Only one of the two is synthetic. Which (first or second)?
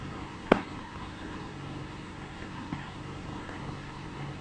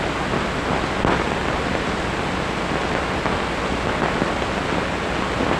first